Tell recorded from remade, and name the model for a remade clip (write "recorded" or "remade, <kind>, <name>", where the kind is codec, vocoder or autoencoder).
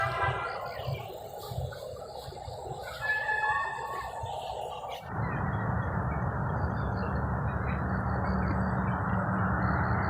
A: recorded